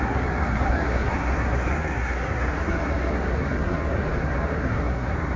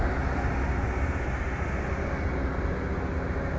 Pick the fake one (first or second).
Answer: first